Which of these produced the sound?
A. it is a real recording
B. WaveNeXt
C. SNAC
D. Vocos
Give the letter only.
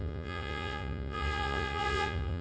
D